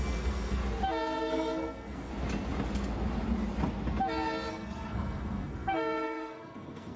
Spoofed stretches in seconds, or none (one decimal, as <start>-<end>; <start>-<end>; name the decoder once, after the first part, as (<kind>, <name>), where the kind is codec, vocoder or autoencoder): 0.0-0.6 (codec, SNAC); 1.2-2.1; 4.5-7.0